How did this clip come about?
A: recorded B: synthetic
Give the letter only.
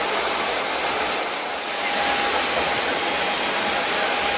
A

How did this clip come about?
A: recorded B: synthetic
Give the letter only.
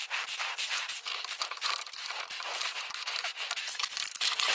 B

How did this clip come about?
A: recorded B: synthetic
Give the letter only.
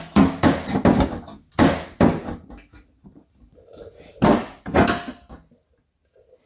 A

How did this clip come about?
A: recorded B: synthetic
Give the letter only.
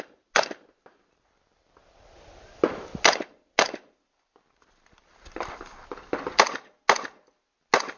A